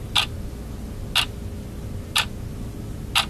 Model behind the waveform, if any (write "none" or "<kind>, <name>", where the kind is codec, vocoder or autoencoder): none